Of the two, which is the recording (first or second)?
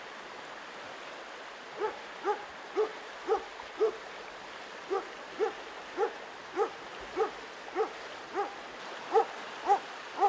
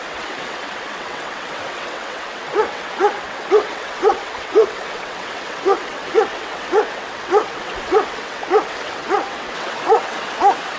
first